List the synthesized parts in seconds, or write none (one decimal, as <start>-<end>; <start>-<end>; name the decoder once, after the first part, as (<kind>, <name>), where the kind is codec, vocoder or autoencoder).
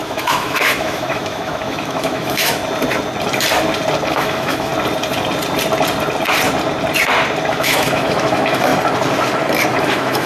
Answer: 0.0-2.6 (autoencoder, DAC-VAE); 4.1-4.7; 7.5-8.7; 9.8-10.3